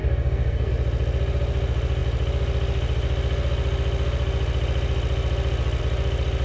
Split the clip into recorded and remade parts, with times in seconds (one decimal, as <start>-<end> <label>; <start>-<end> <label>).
0.0-0.7 remade; 0.7-6.4 recorded